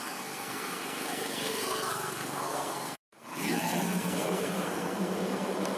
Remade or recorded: remade